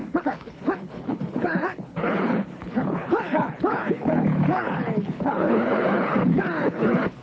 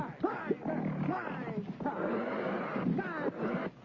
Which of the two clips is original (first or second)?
second